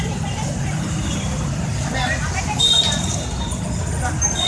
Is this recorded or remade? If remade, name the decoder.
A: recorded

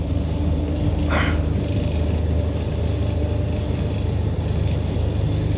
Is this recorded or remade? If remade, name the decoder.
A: recorded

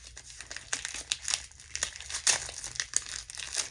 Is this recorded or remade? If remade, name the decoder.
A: recorded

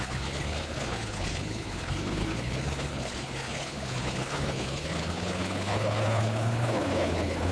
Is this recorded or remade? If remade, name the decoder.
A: remade, codec, HILCodec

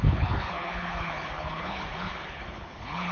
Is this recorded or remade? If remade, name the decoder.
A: remade, codec, HILCodec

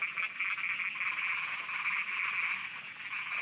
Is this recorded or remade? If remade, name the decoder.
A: recorded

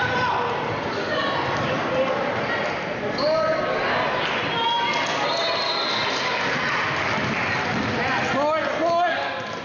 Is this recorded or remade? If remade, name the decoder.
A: recorded